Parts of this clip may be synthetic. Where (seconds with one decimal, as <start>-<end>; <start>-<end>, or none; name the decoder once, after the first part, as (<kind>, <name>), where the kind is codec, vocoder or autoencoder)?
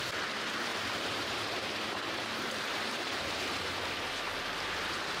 0.7-3.8 (vocoder, BigVGAN v2)